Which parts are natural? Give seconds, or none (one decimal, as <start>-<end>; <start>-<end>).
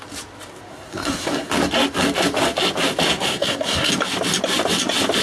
0.0-0.7; 1.5-3.1; 3.9-5.2